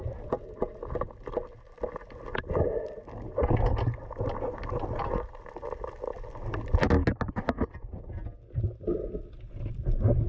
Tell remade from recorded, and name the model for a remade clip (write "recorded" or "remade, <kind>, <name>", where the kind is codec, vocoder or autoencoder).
recorded